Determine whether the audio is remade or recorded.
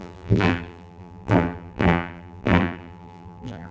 remade